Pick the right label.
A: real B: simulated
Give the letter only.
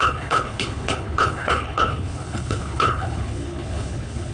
B